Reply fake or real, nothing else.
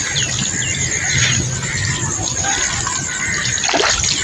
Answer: real